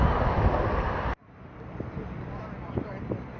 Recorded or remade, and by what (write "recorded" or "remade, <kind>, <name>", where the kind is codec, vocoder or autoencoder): recorded